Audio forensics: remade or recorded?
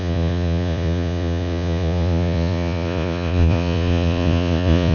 remade